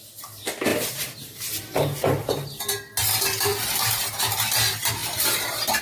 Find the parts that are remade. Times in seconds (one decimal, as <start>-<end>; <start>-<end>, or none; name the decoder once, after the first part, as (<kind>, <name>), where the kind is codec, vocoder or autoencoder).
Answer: 0.7-2.6 (vocoder, BigVGAN v2); 3.5-4.2; 5.0-5.8